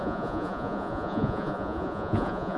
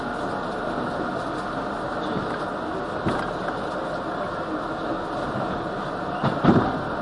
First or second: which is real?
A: second